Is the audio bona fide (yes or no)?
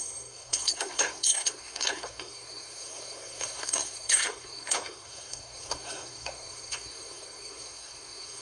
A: no